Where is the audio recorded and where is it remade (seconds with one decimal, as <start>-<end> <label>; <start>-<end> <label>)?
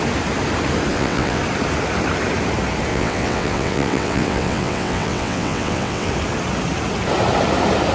0.0-0.9 recorded; 0.9-1.4 remade; 1.4-2.9 recorded; 2.9-6.1 remade; 6.1-7.9 recorded